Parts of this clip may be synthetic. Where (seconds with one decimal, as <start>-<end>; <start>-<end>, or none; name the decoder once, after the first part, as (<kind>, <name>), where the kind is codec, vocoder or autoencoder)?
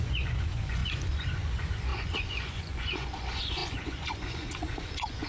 0.0-5.3 (vocoder, Vocos)